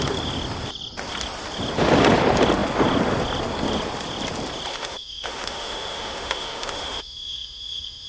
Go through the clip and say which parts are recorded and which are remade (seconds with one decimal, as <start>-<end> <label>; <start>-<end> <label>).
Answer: 0.0-4.7 recorded; 4.7-8.1 remade